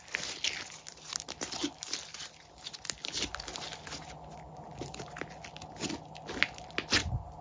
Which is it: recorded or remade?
recorded